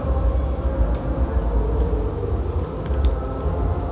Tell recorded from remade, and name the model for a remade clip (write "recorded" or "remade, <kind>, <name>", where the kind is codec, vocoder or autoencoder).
recorded